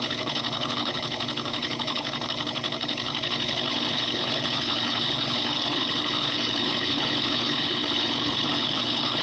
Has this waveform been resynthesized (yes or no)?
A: yes